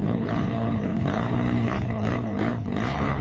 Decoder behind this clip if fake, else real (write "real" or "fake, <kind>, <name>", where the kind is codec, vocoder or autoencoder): fake, codec, HILCodec